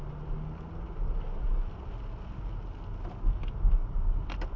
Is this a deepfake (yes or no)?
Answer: no